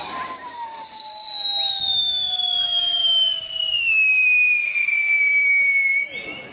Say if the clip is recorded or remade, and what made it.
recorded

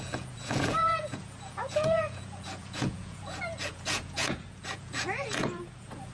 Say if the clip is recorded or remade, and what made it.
remade, vocoder, Vocos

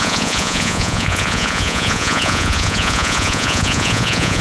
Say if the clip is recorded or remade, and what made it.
remade, vocoder, Vocos